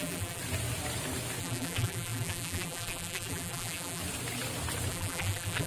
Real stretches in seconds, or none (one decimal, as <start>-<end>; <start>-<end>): 0.4-1.4; 4.0-4.9